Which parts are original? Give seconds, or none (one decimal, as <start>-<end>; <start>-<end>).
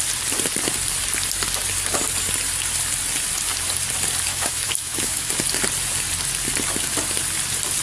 0.0-4.3; 5.3-7.8